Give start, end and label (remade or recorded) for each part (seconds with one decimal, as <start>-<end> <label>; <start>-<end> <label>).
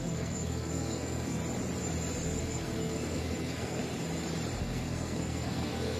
0.0-1.4 remade; 1.4-2.4 recorded; 2.4-3.8 remade; 3.8-4.6 recorded; 4.6-6.0 remade